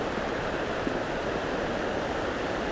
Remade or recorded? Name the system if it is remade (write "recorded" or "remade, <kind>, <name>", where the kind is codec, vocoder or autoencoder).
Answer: recorded